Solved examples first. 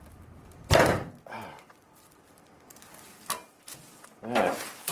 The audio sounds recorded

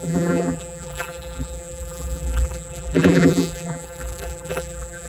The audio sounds remade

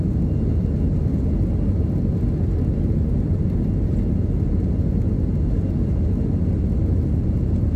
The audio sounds recorded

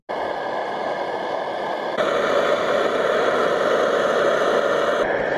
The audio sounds recorded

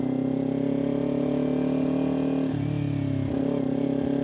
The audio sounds recorded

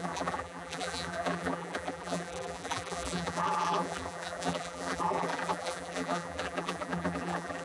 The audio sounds remade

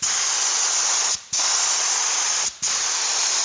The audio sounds recorded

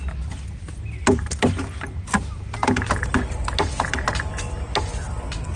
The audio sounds recorded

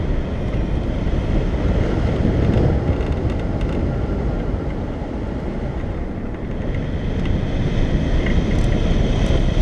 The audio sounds recorded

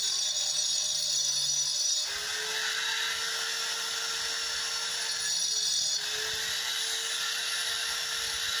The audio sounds recorded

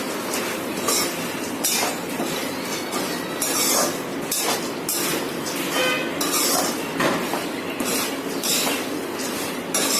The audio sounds recorded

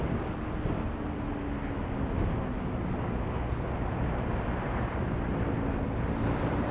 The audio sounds recorded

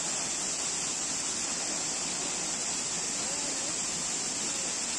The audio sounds recorded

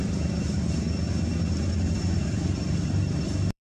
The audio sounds remade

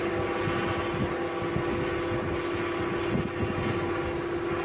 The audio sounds recorded